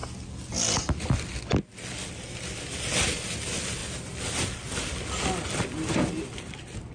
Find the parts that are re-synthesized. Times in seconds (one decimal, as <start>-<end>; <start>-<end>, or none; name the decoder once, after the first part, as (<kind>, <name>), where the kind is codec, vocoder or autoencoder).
none